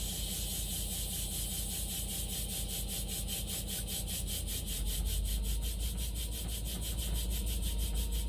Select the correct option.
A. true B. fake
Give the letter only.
A